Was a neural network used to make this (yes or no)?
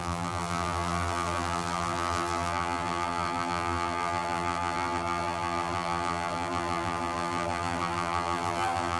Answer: yes